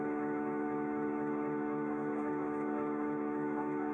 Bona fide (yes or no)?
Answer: no